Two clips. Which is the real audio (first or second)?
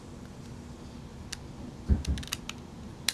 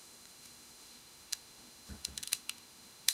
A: first